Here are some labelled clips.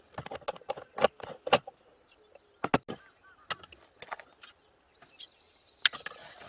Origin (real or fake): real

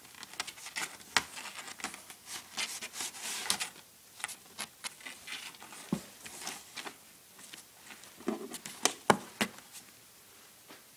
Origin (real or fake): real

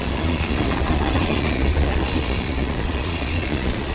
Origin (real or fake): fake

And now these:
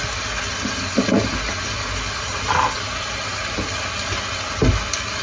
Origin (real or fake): real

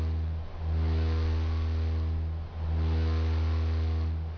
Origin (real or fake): real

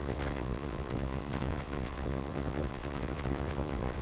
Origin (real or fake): fake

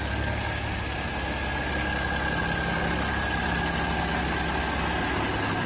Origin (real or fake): real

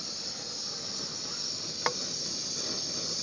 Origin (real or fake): real